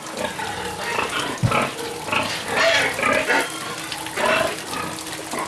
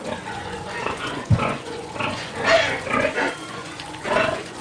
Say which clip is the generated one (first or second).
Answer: second